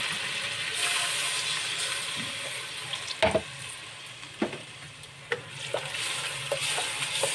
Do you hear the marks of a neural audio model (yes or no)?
no